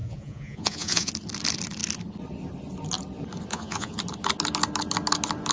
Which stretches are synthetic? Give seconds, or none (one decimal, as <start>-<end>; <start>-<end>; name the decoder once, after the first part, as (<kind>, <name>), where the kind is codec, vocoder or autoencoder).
0.0-1.1 (vocoder, Vocos); 3.5-4.0